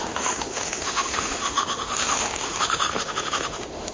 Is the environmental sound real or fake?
fake